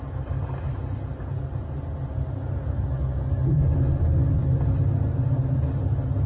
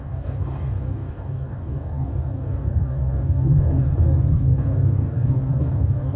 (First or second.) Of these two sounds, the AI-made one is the second